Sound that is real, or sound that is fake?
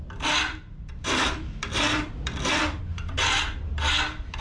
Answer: fake